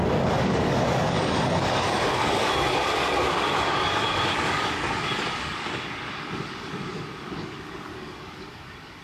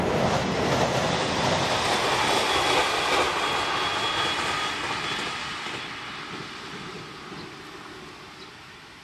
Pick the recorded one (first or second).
second